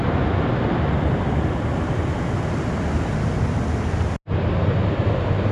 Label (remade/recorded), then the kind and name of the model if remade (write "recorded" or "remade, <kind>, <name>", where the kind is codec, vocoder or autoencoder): recorded